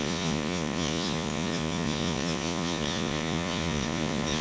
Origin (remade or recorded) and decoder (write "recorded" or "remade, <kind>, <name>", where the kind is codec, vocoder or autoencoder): remade, vocoder, Vocos